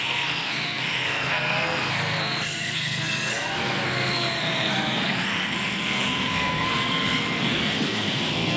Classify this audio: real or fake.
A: fake